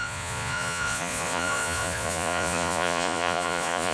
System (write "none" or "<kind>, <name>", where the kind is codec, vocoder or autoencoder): vocoder, Vocos